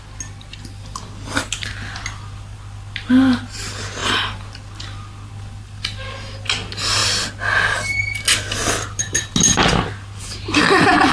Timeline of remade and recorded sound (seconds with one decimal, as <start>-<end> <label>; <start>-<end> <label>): 0.0-11.1 recorded